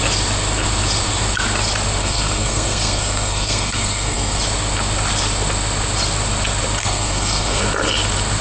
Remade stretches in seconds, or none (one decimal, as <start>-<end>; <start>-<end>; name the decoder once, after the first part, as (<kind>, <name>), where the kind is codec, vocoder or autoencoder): 2.0-4.4 (codec, SNAC); 6.8-7.6

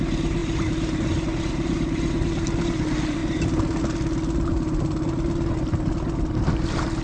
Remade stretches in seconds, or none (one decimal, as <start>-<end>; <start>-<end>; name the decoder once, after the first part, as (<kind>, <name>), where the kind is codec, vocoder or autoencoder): none

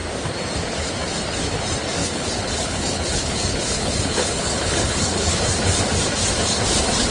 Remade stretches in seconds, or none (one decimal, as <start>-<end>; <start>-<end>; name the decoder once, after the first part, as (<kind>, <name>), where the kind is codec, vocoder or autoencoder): 2.0-5.4 (codec, HILCodec)

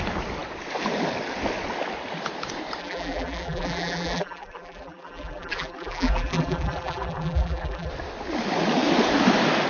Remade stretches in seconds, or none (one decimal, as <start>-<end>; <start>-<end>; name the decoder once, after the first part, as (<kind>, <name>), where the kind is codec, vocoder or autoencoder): 2.8-7.9 (vocoder, BigVGAN v2)

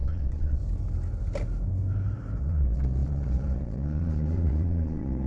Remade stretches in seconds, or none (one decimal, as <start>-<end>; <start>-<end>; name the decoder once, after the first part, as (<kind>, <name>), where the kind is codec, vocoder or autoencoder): 0.0-0.6 (vocoder, Vocos); 2.4-5.3

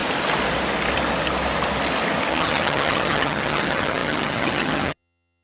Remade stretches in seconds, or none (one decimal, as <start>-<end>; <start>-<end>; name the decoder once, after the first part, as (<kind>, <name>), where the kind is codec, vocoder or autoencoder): 2.3-5.4 (vocoder, HiFi-GAN)

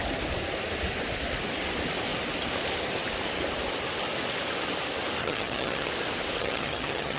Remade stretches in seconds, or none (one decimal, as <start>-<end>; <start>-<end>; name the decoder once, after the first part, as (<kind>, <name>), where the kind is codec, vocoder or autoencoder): 5.2-5.9 (vocoder, HiFi-GAN); 6.4-7.2